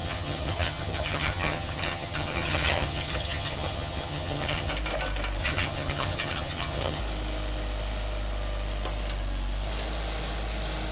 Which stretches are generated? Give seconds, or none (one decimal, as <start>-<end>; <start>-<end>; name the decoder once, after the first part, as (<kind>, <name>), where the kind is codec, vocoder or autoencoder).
0.0-4.7 (vocoder, HiFi-GAN); 5.4-7.0